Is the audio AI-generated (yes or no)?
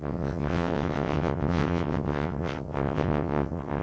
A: yes